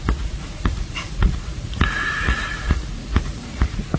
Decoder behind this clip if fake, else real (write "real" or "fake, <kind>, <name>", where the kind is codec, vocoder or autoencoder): fake, vocoder, Vocos